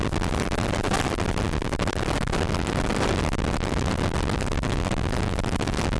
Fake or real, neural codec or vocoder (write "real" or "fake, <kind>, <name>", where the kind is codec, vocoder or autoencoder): fake, vocoder, BigVGAN v2